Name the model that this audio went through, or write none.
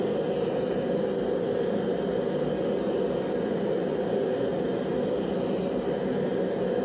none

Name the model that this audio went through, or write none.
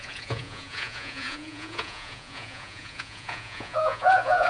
vocoder, Vocos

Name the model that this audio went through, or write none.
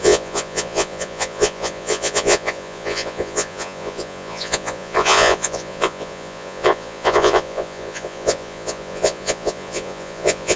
vocoder, Vocos